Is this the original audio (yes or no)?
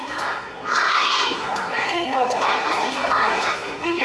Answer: no